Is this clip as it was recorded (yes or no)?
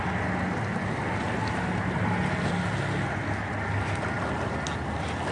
yes